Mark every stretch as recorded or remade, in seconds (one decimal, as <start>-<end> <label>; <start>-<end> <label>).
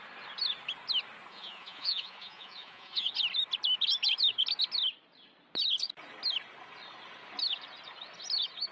0.0-1.3 recorded; 1.3-3.1 remade; 3.1-8.7 recorded